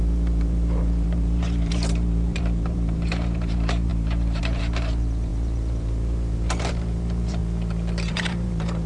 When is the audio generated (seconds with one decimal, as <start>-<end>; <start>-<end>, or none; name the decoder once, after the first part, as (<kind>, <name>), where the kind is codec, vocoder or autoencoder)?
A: 0.0-7.4 (vocoder, BigVGAN v2); 8.1-8.9

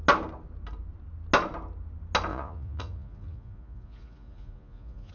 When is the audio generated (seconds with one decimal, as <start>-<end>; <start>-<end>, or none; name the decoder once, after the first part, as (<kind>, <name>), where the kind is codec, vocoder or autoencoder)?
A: 2.3-5.1 (vocoder, Vocos)

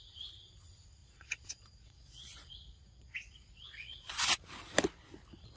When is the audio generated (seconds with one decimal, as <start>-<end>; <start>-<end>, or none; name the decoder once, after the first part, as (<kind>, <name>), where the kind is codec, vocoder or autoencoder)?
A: 1.0-4.4 (vocoder, Vocos)

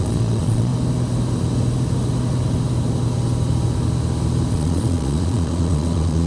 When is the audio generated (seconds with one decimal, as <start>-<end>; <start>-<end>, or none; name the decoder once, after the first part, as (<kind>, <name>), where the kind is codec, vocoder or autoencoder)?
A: 0.0-0.7 (vocoder, Vocos); 4.5-6.3

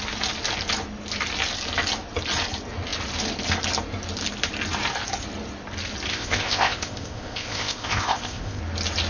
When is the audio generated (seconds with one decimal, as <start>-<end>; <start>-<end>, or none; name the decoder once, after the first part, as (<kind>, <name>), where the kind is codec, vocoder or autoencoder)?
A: 6.1-8.6 (codec, ZipCodec)

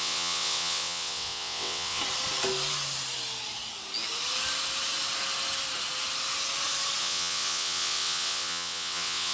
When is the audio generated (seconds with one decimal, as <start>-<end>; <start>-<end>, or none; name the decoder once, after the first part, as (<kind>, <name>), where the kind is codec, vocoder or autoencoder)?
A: 0.0-2.0 (vocoder, WaveNeXt); 7.0-9.3

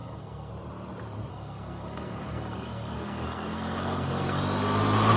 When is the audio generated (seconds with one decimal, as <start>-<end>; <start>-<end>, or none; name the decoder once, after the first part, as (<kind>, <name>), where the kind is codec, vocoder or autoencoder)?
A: 0.0-0.5 (codec, SNAC); 1.3-4.4

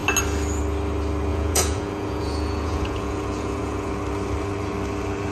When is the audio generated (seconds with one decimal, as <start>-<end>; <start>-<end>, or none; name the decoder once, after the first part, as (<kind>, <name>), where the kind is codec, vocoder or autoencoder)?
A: 1.3-3.9 (vocoder, Vocos)